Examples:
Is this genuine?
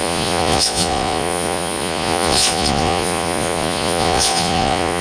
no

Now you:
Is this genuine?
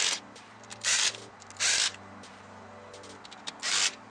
yes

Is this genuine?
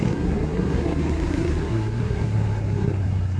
no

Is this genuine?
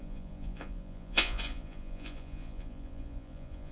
no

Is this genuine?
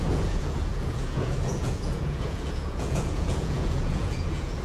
no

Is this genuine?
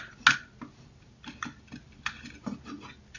yes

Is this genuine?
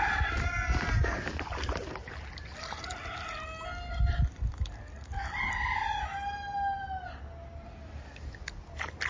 yes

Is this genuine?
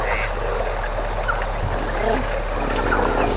yes